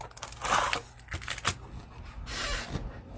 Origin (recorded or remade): recorded